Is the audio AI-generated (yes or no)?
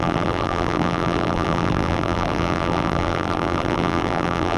yes